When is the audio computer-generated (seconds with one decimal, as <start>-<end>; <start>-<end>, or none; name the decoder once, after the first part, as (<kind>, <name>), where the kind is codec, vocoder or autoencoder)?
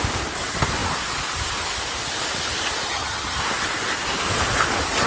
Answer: 2.9-3.4 (vocoder, HiFi-GAN)